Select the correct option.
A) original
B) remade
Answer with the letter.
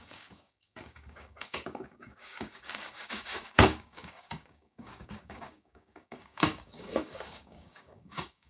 B